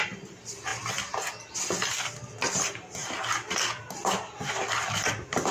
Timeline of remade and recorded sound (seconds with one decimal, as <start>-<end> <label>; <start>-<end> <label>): 0.0-5.5 recorded